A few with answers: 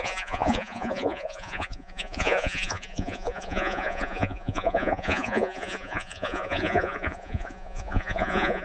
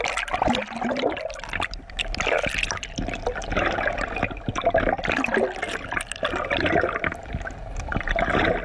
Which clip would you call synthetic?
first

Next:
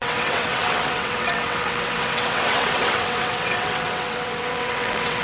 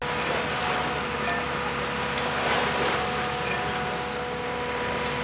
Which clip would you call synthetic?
first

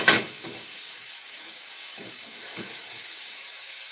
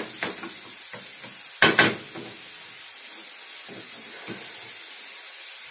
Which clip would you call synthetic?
first